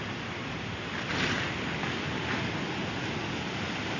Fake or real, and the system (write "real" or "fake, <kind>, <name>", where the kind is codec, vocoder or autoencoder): real